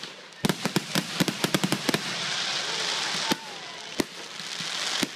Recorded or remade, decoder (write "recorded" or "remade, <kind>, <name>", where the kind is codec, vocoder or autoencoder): recorded